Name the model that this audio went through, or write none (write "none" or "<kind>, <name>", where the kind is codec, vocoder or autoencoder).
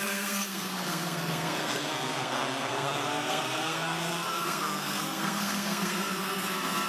codec, SNAC